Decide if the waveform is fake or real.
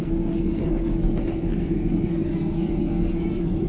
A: fake